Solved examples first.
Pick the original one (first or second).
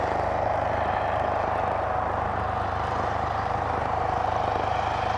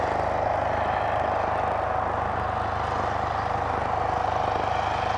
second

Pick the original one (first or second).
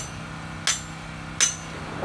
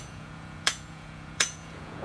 first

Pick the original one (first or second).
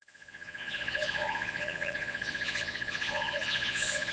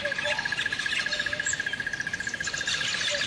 second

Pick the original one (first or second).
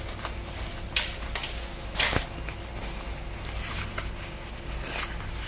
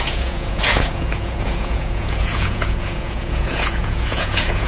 first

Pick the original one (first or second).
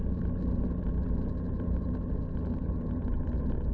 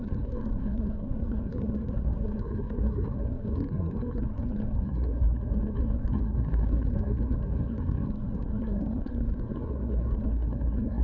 first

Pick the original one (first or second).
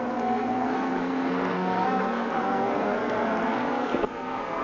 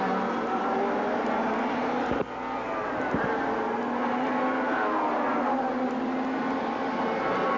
second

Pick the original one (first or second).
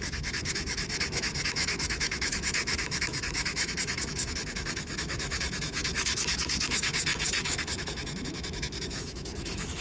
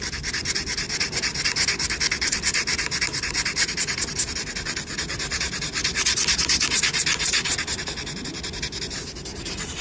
second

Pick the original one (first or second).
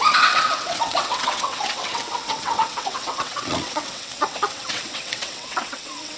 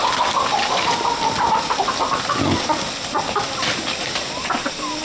second